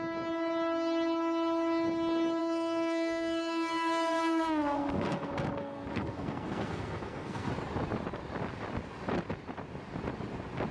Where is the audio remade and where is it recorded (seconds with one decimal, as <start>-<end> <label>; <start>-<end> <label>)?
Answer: 0.0-2.4 recorded; 2.4-7.5 remade; 7.5-10.7 recorded